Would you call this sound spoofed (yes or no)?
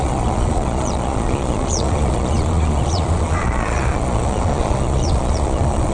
yes